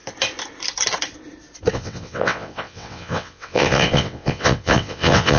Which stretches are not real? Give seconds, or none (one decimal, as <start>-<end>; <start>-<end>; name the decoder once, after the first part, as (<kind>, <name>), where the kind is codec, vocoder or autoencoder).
1.7-5.4 (vocoder, WaveNeXt)